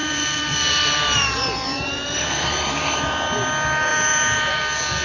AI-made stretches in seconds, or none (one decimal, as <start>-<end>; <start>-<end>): 0.0-3.0; 3.9-4.6